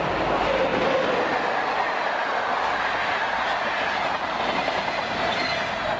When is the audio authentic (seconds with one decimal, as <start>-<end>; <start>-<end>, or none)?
0.0-6.0